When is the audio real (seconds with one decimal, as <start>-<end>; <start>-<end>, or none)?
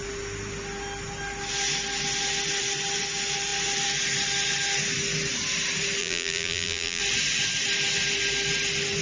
0.0-6.0; 7.0-9.0